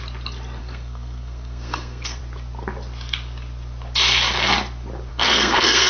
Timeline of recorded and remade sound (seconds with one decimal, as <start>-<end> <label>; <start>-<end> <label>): 0.0-0.6 recorded; 0.6-2.2 remade; 2.2-5.1 recorded; 5.1-5.9 remade